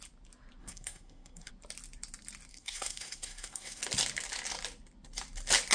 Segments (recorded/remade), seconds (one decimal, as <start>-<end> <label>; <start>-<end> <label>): 0.0-0.6 recorded; 0.6-1.5 remade; 1.5-2.5 recorded; 2.5-3.8 remade; 3.8-5.7 recorded